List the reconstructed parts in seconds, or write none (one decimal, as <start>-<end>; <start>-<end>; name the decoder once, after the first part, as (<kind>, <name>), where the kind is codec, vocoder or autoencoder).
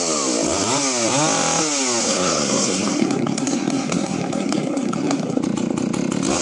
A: 2.0-5.4 (codec, SNAC)